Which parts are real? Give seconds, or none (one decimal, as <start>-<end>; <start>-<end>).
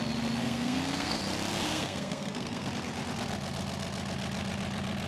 0.0-0.4; 1.2-1.7; 2.7-5.1